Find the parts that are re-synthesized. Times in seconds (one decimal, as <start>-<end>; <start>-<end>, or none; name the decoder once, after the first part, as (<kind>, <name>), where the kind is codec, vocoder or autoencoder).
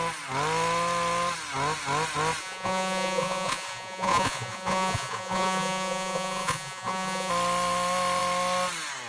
2.4-7.3 (vocoder, Vocos)